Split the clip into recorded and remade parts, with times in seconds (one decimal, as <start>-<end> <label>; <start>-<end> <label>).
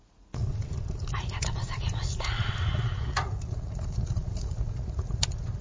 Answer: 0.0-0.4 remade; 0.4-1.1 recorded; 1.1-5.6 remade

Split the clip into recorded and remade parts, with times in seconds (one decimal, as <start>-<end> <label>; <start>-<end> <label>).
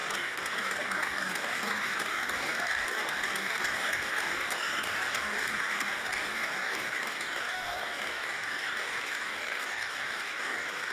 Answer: 0.0-10.9 remade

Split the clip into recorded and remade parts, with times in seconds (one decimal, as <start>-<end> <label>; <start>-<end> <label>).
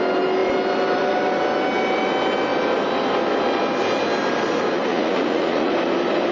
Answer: 0.0-4.9 recorded; 4.9-5.7 remade; 5.7-6.3 recorded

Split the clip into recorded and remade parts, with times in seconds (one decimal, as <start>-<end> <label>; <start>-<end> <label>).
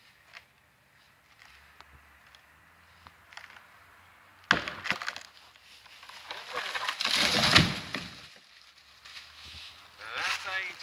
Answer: 0.0-9.1 recorded; 9.1-9.7 remade; 9.7-10.8 recorded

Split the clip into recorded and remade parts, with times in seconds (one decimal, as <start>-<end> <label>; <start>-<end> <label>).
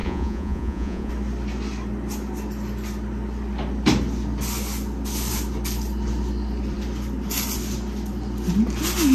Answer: 0.0-1.1 remade; 1.1-9.1 recorded